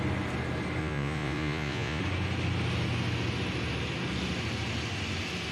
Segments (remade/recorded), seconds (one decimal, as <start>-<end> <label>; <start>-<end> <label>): 0.0-0.8 recorded; 0.8-2.0 remade; 2.0-5.5 recorded